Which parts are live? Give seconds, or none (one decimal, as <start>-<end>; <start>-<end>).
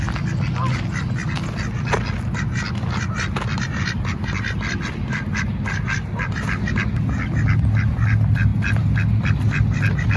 0.0-10.2